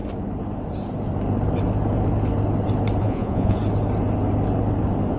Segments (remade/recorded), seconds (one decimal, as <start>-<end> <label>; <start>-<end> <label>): 0.0-3.0 recorded; 3.0-3.6 remade; 3.6-5.2 recorded